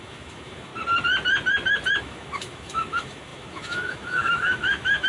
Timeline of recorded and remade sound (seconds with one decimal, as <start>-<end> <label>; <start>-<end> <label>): 0.0-0.7 remade; 0.7-2.0 recorded; 2.0-5.1 remade